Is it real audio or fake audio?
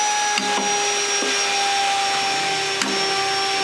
real